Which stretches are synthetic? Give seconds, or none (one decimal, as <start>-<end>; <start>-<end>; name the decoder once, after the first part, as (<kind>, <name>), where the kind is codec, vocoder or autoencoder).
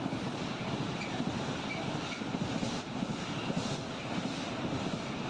none